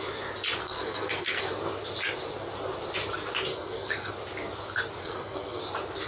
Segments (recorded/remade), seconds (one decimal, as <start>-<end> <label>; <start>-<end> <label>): 0.0-0.6 recorded; 0.6-1.5 remade; 1.5-3.5 recorded; 3.5-4.1 remade; 4.1-5.0 recorded; 5.0-5.6 remade; 5.6-6.1 recorded